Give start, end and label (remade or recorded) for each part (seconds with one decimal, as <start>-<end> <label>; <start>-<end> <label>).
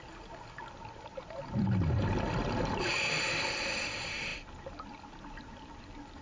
0.0-6.2 recorded